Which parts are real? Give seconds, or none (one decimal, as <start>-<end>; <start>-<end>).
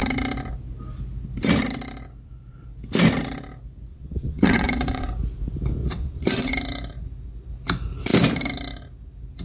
0.0-3.9; 5.1-5.8; 6.5-9.4